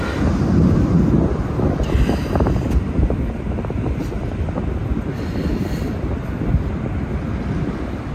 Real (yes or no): yes